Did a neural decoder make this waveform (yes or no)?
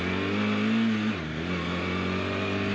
no